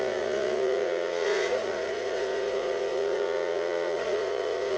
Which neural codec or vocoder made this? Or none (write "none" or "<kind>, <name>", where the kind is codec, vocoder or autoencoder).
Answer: vocoder, Vocos